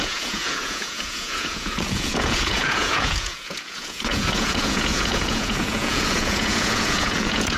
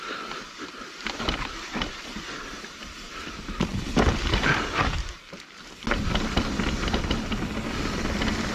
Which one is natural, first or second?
second